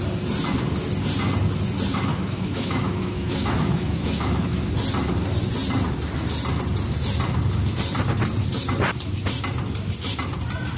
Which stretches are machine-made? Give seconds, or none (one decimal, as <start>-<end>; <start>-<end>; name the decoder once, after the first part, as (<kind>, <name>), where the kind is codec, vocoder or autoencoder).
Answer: 2.1-4.7 (autoencoder, DAC-VAE)